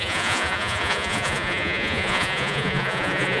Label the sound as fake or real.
fake